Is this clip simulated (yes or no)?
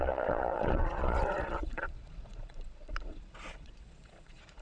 yes